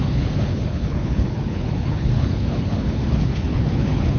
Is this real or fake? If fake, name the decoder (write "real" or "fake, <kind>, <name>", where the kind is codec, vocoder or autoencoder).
fake, codec, HILCodec